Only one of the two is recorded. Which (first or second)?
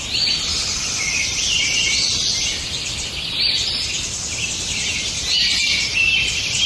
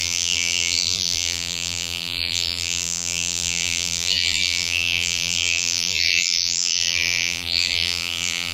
first